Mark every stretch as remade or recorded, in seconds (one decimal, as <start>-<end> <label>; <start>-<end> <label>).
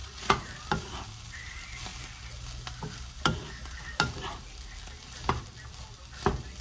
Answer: 0.0-0.5 remade; 0.5-6.6 recorded